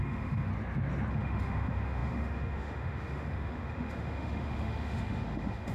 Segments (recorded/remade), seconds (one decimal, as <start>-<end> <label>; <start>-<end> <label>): 0.0-0.5 remade; 0.5-1.1 recorded; 1.1-5.7 remade